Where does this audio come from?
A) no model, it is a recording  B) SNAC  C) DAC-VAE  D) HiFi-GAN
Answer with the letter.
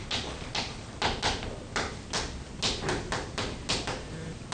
A